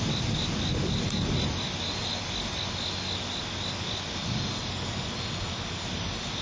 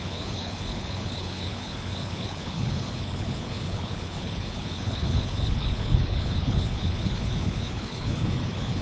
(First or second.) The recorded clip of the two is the first